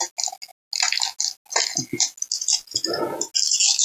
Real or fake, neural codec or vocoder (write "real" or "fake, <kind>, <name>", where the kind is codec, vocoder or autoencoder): real